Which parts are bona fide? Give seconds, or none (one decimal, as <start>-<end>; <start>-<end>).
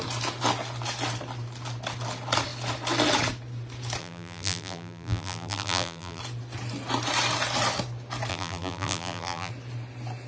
0.0-4.0; 6.2-8.3; 9.5-10.3